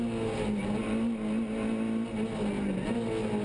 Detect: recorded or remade recorded